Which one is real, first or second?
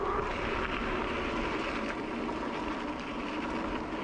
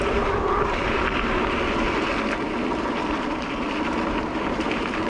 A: first